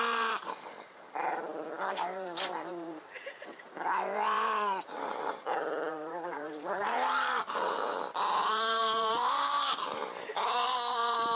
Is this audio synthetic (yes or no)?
yes